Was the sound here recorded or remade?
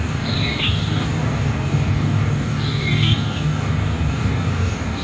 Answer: remade